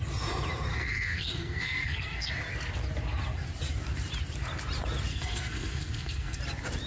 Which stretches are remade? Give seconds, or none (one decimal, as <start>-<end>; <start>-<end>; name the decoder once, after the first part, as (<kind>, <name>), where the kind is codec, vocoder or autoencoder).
0.7-2.3 (codec, SNAC); 5.1-6.4